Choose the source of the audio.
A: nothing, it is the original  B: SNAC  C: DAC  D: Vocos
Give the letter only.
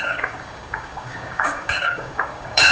C